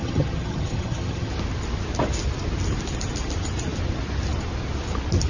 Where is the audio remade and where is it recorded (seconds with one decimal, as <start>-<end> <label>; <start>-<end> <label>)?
0.0-1.3 remade; 1.3-5.3 recorded